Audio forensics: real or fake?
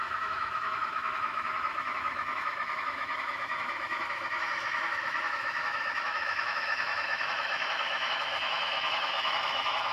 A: fake